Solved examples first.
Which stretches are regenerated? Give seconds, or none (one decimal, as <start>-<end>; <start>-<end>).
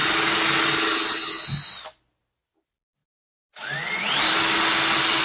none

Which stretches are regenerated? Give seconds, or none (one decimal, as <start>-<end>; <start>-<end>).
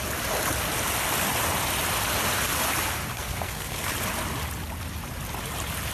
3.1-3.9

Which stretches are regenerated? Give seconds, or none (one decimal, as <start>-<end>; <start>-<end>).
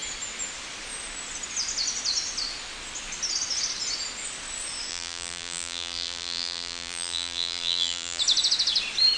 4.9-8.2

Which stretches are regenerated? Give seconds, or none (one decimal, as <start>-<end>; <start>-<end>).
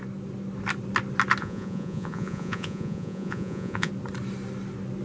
1.4-3.9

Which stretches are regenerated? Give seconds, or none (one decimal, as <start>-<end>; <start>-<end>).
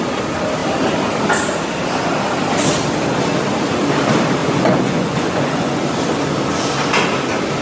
4.4-5.8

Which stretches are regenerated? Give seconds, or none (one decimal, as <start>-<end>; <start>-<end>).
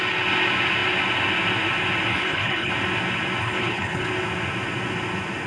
2.1-2.7; 3.4-4.1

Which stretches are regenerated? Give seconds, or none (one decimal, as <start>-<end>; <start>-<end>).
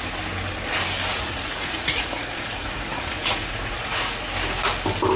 1.1-4.2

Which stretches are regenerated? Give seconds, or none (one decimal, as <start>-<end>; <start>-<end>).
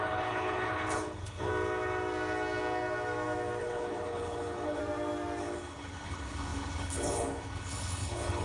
0.0-1.5; 3.6-4.8; 5.4-8.4